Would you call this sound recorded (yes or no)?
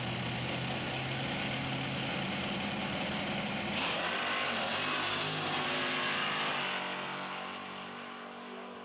yes